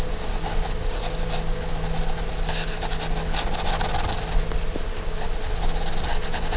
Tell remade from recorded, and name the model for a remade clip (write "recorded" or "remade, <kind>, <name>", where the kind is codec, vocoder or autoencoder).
recorded